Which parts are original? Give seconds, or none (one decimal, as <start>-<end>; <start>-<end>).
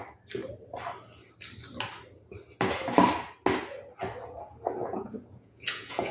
0.0-4.8